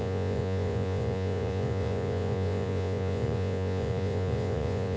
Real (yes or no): no